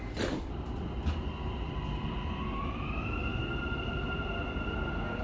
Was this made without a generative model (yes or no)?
yes